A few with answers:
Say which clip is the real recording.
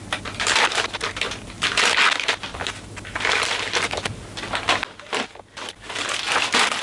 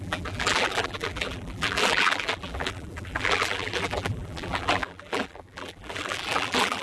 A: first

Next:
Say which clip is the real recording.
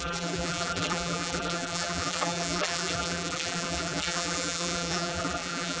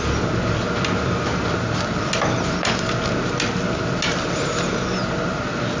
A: second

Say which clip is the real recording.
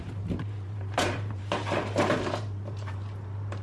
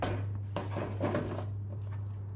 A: second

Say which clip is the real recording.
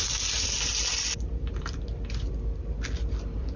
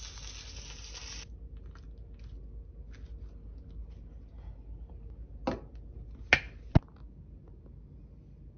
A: second